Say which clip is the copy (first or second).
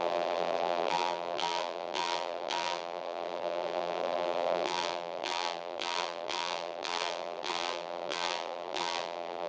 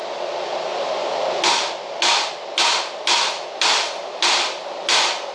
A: first